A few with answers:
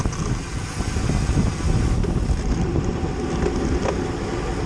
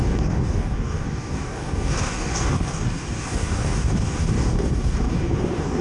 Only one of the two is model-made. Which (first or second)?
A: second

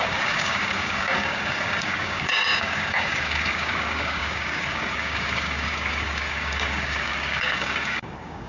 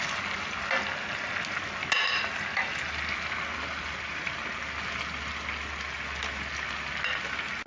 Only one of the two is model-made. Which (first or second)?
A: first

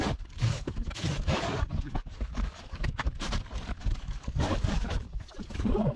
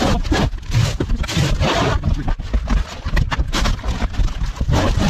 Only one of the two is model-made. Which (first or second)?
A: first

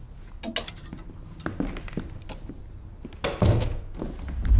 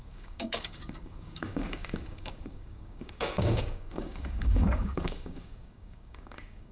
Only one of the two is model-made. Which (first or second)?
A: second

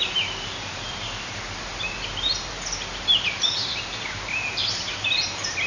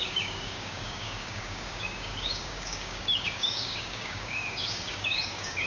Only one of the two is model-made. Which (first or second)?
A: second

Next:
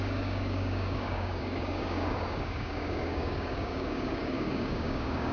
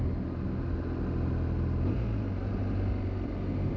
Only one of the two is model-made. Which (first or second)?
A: first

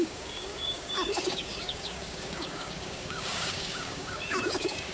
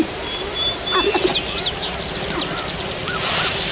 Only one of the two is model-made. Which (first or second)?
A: first